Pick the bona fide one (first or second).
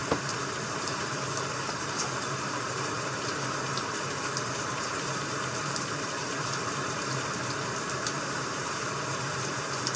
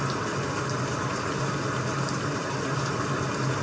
second